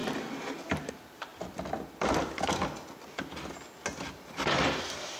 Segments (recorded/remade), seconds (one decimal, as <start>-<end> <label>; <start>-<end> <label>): 0.0-1.3 remade; 1.3-4.4 recorded; 4.4-5.2 remade